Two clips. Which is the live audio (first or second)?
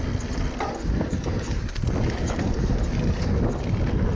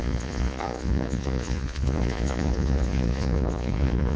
first